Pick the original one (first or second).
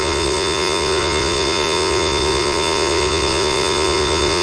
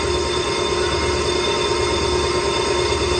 second